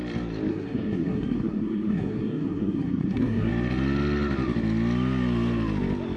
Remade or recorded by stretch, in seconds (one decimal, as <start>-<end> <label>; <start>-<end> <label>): 0.0-0.5 recorded; 0.5-3.5 remade; 3.5-6.2 recorded